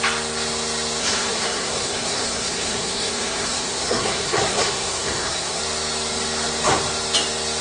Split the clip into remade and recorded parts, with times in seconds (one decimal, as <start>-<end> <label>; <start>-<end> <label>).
0.0-1.0 recorded; 1.0-5.6 remade; 5.6-7.6 recorded